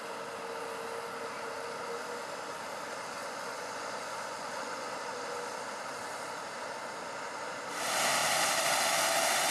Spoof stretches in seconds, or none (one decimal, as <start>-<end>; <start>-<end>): 3.2-4.9

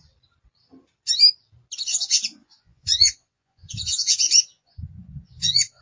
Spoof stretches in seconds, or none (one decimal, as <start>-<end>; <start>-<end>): 1.9-5.8

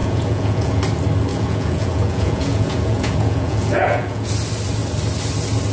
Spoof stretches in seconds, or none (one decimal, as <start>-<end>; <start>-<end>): 0.0-0.8; 1.3-4.3

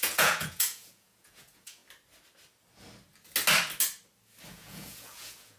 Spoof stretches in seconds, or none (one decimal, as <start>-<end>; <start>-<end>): 0.0-1.8; 4.5-5.6

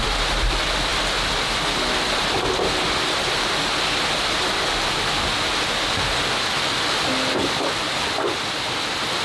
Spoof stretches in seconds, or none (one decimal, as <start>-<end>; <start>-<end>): none